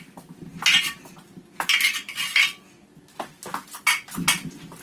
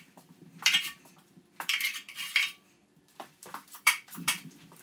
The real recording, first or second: first